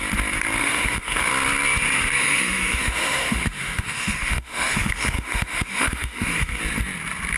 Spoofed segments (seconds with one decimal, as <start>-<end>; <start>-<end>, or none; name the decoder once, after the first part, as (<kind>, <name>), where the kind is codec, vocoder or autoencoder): 0.6-1.3 (autoencoder, DAC-VAE); 2.2-6.6